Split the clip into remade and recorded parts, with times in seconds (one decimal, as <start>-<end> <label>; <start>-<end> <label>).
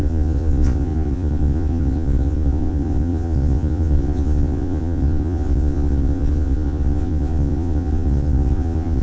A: 0.0-9.0 remade